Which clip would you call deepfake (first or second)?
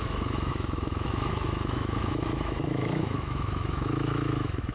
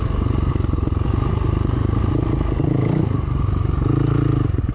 first